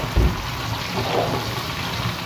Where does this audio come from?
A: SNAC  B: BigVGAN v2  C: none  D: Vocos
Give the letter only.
C